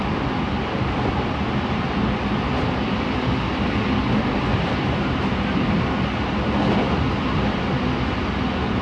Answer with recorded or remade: recorded